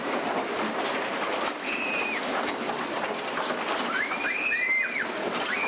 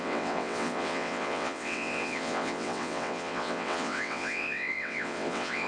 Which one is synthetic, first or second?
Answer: second